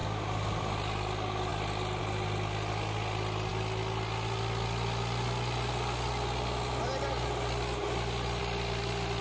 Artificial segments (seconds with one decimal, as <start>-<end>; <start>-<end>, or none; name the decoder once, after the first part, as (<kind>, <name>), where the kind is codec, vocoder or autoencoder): none